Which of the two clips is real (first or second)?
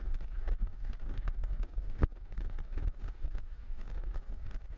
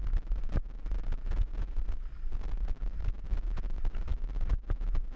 second